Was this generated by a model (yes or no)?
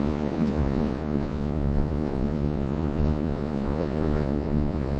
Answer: yes